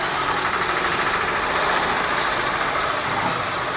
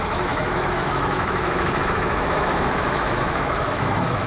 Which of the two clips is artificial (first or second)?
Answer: second